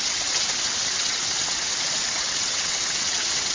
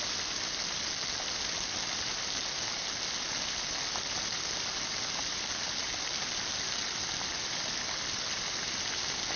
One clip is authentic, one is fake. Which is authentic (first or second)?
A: second